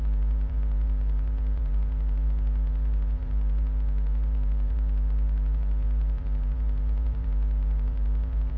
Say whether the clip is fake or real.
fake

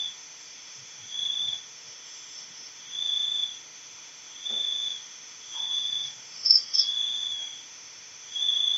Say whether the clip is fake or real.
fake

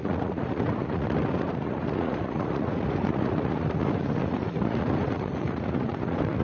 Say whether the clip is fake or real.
fake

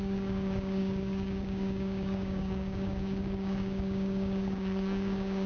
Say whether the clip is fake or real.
fake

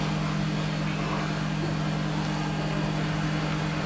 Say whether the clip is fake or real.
real